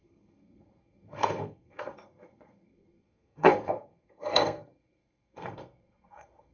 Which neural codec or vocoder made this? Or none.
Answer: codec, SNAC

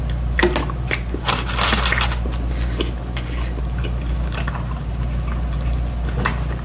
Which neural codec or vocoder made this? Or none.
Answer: none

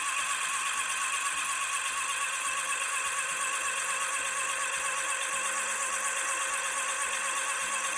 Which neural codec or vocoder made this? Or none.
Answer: none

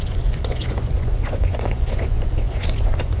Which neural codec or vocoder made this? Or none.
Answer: vocoder, Vocos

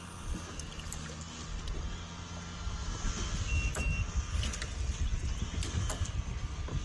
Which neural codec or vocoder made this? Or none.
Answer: none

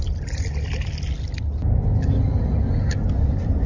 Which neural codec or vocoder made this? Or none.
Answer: none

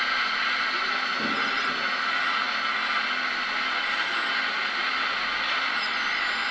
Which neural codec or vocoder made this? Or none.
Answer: none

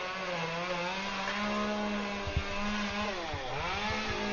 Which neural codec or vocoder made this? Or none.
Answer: none